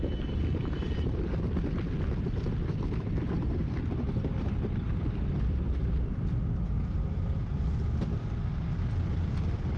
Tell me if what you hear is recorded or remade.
recorded